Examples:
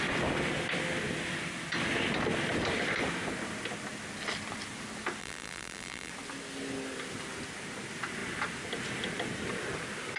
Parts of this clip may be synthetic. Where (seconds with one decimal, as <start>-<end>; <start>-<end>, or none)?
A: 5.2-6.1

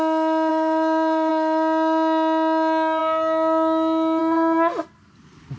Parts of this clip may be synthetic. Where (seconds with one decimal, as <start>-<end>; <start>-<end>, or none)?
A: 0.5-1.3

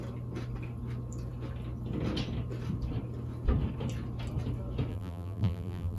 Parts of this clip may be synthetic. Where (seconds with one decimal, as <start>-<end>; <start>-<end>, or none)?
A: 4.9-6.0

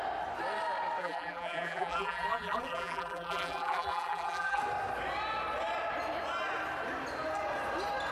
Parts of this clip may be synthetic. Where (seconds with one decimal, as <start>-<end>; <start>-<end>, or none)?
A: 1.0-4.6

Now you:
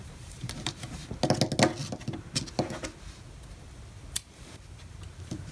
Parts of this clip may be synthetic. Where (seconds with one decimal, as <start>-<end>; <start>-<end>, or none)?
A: 0.0-1.0; 4.3-5.5

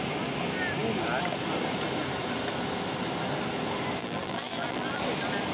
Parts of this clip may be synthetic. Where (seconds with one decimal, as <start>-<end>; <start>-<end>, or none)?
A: 4.0-5.0

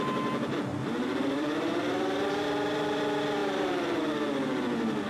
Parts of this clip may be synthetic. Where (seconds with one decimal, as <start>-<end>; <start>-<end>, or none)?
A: 0.7-3.0; 3.4-4.0